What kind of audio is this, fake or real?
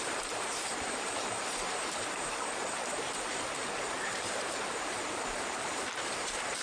fake